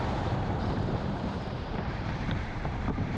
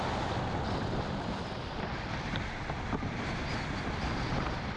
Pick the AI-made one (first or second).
first